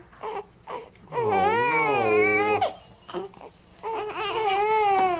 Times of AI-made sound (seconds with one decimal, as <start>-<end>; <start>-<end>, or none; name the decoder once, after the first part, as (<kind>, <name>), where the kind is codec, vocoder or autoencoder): 3.7-4.5 (codec, DAC)